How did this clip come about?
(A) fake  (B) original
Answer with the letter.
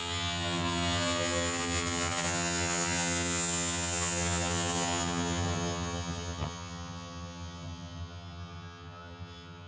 A